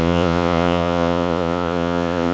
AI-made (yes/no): yes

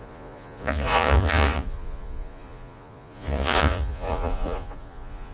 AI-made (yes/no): yes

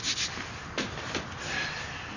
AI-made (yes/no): no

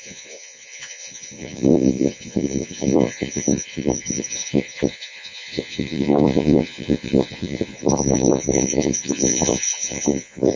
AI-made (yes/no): yes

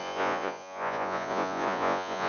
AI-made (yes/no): yes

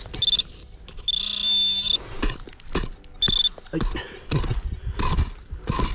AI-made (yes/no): no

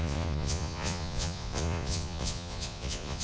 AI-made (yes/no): yes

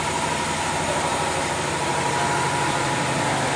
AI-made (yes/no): no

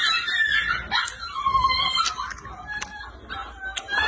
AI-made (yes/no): no